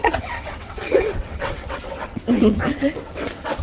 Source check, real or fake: fake